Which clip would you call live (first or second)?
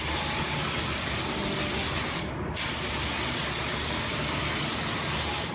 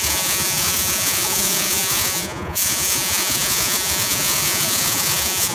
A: first